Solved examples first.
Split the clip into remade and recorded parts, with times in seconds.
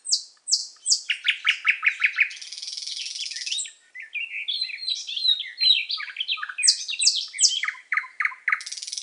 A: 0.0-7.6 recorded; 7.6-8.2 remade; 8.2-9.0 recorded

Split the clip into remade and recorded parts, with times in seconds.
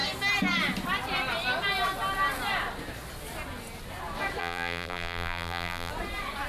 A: 0.0-4.4 recorded; 4.4-5.9 remade; 5.9-6.5 recorded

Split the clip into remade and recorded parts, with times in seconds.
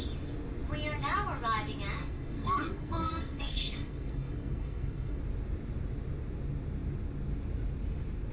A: 0.0-2.0 recorded; 2.0-5.2 remade; 5.2-8.3 recorded